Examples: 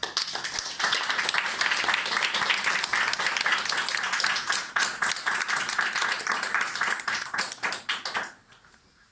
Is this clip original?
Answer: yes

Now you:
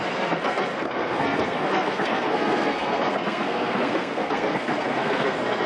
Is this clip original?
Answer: no